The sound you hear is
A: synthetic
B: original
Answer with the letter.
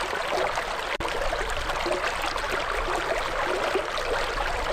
B